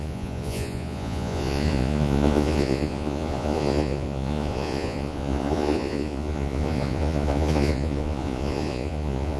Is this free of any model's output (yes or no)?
no